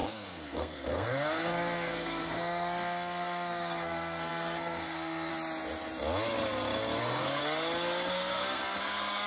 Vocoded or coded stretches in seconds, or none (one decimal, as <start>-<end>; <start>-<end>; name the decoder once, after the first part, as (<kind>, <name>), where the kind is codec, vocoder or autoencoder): 0.0-5.3 (codec, SNAC); 7.0-7.4; 8.1-9.3